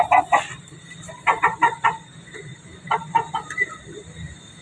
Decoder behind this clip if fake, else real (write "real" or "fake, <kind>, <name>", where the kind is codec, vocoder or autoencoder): real